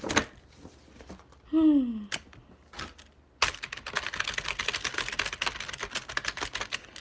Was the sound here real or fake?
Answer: real